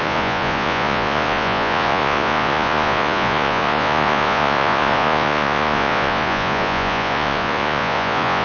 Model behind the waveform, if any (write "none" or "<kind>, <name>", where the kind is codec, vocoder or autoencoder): vocoder, Vocos